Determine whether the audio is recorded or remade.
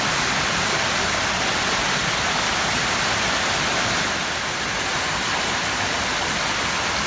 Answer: recorded